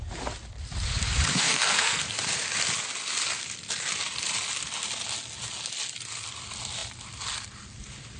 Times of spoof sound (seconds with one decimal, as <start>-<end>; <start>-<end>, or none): 1.3-2.0